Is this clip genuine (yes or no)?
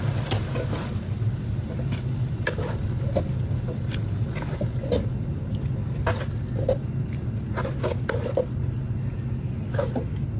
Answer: yes